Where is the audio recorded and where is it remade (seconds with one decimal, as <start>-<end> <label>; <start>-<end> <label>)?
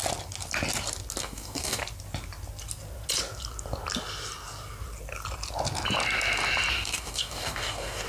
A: 0.0-1.2 recorded; 1.2-1.8 remade; 1.8-6.7 recorded; 6.7-8.1 remade